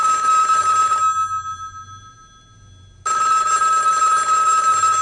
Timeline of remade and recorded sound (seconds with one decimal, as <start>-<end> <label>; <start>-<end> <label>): 0.0-5.0 recorded